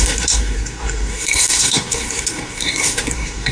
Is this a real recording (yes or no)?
no